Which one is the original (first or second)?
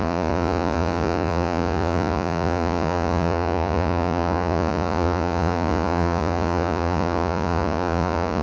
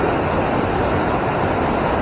second